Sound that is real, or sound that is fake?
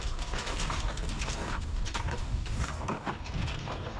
fake